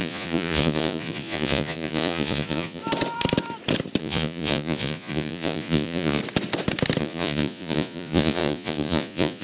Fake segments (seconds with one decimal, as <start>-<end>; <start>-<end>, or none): 0.0-2.8; 4.0-6.2; 7.0-9.4